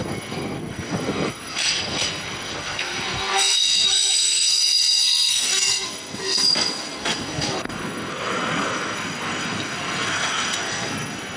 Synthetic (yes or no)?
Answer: yes